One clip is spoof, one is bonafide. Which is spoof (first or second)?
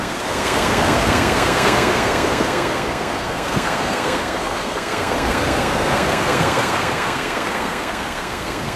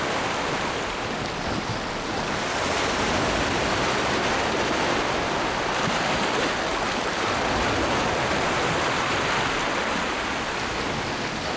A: first